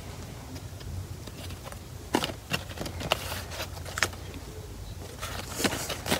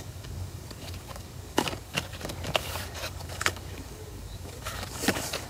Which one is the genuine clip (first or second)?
first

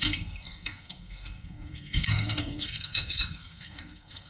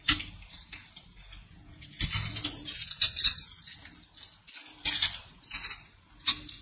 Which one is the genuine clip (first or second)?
second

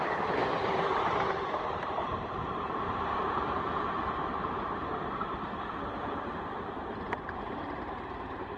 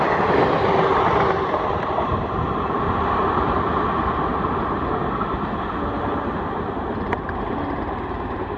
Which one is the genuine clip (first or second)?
second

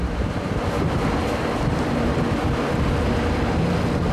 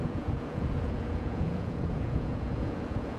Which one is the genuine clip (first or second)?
first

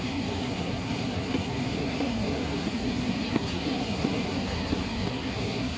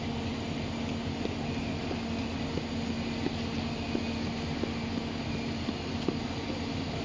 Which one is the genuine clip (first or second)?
second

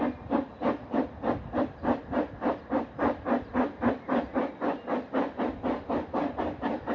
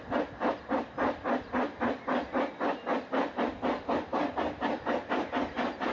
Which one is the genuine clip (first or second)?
second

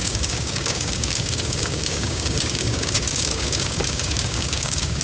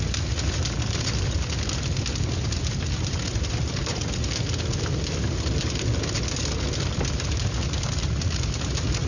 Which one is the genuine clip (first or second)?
second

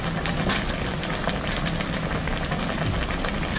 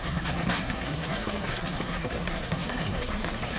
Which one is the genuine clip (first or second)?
first